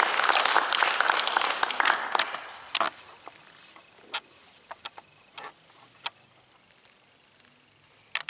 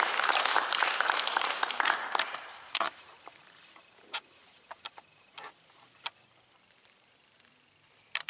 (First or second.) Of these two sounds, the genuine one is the first